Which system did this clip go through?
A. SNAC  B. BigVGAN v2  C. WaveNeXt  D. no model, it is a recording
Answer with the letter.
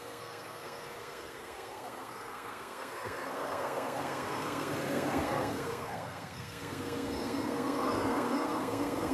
A